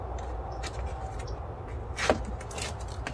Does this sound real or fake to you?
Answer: real